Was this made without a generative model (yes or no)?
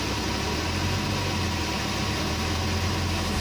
yes